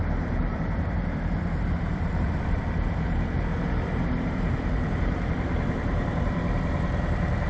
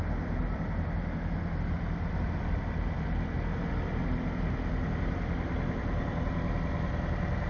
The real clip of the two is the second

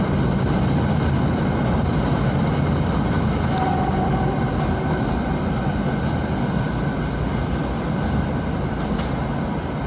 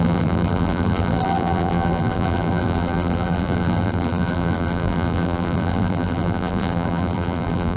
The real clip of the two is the first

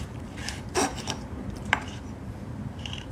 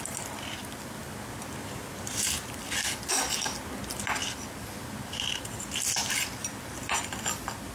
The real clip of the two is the second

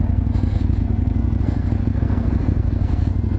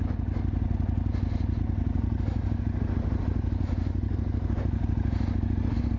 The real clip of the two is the second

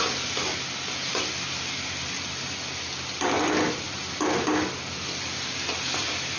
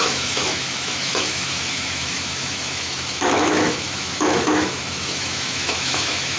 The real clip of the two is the first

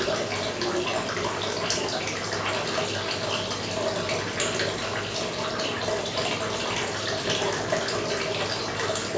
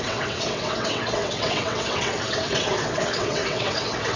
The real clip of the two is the first